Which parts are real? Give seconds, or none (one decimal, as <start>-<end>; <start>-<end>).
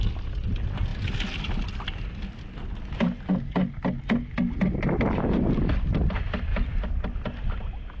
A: 0.0-8.0